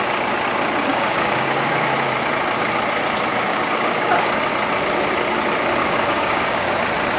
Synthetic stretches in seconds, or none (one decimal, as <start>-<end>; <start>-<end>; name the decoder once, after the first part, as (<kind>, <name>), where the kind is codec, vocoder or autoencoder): 0.9-1.8 (codec, DAC); 3.3-4.5; 5.8-6.7